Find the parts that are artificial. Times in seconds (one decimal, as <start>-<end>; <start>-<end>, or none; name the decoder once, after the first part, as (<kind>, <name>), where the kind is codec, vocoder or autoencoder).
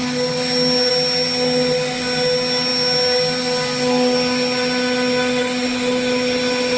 none